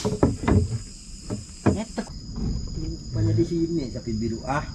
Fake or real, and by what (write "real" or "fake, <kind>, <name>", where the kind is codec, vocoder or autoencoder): real